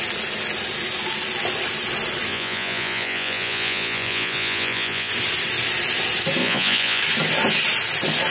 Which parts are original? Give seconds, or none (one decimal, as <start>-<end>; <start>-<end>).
0.0-2.3; 5.1-6.4; 7.0-8.3